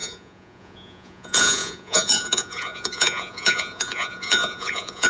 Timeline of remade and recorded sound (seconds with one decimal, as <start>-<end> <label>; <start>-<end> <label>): 0.0-5.1 remade